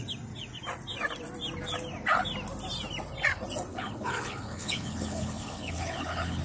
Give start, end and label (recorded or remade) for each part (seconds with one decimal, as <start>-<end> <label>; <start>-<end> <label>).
0.0-3.7 recorded; 3.7-6.4 remade

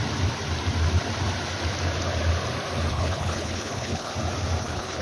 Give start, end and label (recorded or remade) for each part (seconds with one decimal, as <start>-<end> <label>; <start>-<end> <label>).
0.0-2.9 recorded; 2.9-4.1 remade; 4.1-4.6 recorded; 4.6-5.0 remade

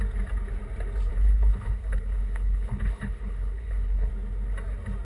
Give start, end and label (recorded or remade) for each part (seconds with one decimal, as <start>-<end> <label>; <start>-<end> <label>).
0.0-1.1 recorded; 1.1-4.1 remade; 4.1-5.0 recorded

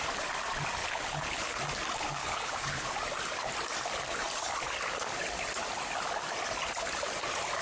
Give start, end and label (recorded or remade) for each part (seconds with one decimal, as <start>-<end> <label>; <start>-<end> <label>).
0.0-0.8 recorded; 0.8-1.6 remade; 1.6-2.2 recorded; 2.2-2.9 remade; 2.9-7.6 recorded

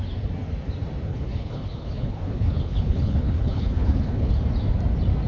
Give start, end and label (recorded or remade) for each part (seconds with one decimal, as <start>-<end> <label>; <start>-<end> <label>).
0.0-1.1 recorded; 1.1-4.3 remade; 4.3-5.3 recorded

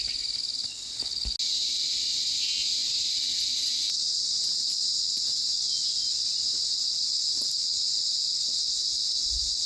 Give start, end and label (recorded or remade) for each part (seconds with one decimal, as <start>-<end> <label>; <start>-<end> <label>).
0.0-0.7 recorded; 0.7-1.3 remade; 1.3-9.7 recorded

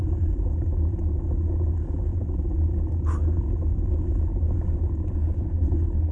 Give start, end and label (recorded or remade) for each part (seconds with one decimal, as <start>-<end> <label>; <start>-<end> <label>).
0.0-5.2 recorded; 5.2-6.1 remade